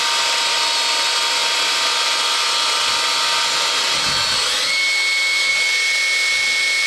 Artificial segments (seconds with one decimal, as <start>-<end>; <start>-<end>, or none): none